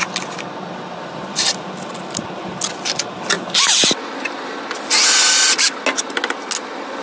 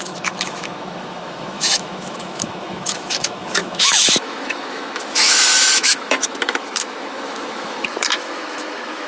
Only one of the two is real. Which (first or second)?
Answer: first